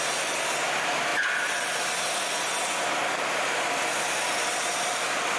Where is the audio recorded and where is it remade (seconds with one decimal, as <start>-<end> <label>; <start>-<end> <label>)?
0.0-5.4 recorded